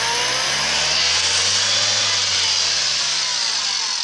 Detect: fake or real real